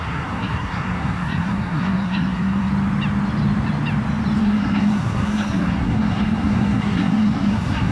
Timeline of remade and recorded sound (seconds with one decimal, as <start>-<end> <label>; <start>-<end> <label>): 0.0-2.7 remade; 2.7-4.4 recorded; 4.4-7.9 remade